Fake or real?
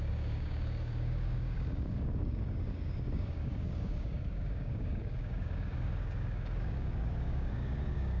fake